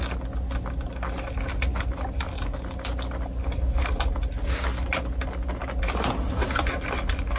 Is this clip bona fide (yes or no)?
yes